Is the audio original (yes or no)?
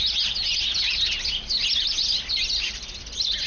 yes